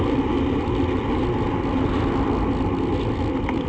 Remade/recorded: recorded